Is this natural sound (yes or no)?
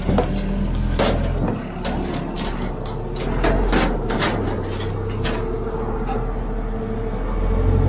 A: yes